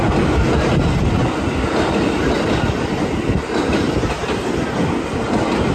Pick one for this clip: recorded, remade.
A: recorded